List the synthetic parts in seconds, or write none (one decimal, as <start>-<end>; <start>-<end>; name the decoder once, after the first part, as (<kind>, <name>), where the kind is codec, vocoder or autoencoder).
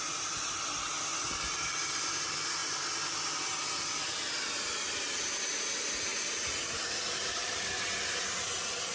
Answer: 6.1-7.6 (vocoder, BigVGAN v2)